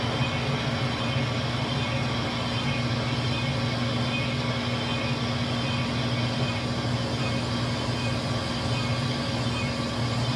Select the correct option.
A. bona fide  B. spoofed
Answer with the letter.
A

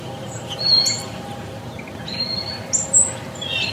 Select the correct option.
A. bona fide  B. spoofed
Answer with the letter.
A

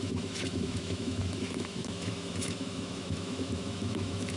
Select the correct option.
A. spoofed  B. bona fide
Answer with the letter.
A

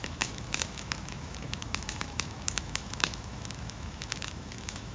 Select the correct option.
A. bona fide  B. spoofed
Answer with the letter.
B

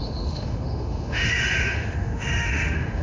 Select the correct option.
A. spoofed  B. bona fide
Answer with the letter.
A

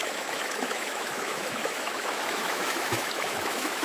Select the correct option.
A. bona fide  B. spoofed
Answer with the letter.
B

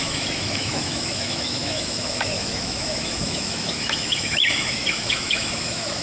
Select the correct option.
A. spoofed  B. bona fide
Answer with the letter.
A